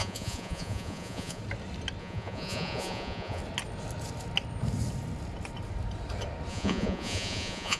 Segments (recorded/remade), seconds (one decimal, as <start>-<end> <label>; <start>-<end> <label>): 0.0-1.4 remade; 1.4-2.0 recorded; 2.0-3.4 remade; 3.4-6.5 recorded; 6.5-7.8 remade